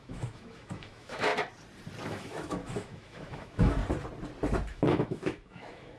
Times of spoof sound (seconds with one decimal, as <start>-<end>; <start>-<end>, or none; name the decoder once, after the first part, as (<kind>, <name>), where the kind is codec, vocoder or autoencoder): 0.0-1.3 (autoencoder, DAC-VAE); 2.1-3.8; 4.7-6.0